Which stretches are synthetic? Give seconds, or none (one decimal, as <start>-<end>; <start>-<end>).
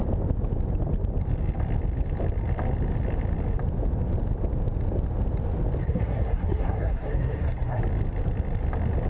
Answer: 5.8-7.8